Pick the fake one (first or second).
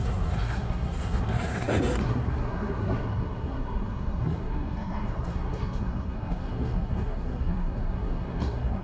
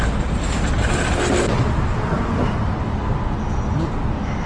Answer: first